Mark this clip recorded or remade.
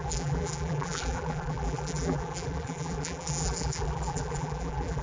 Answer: remade